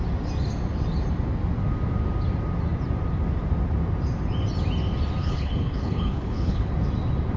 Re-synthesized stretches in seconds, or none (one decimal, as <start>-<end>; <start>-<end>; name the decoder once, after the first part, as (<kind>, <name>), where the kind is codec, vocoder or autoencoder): 5.2-6.7 (codec, HILCodec)